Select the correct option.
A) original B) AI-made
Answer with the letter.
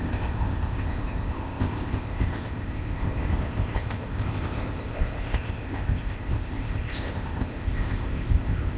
B